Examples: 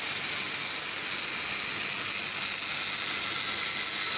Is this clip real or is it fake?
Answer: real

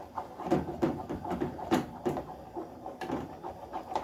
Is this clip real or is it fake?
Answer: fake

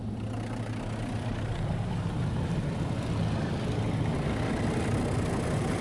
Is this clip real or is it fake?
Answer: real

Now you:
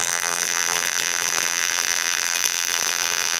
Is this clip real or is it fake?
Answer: fake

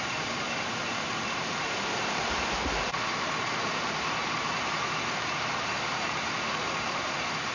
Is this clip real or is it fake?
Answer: fake